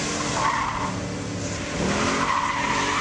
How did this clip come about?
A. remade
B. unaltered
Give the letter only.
B